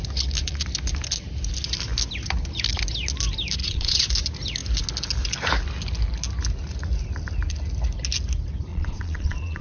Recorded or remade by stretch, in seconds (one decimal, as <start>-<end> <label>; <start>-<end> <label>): 0.0-3.6 recorded; 3.6-4.1 remade; 4.1-8.7 recorded; 8.7-9.6 remade